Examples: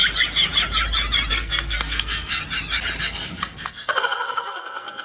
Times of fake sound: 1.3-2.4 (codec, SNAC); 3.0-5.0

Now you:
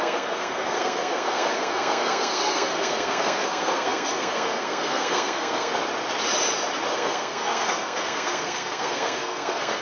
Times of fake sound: 0.0-5.7 (codec, SNAC); 6.9-9.8

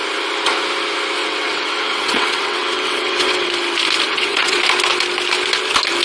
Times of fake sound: 1.2-3.5 (vocoder, WaveNeXt); 4.1-4.6

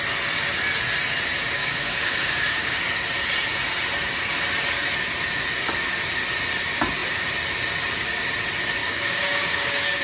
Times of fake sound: 1.6-2.8 (codec, DAC); 8.8-10.0

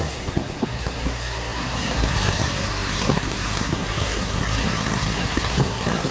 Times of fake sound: 0.0-6.1 (codec, SNAC)